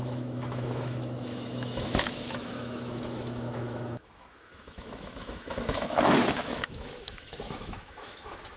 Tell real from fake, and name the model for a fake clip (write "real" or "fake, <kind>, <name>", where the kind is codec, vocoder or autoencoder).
fake, autoencoder, DAC-VAE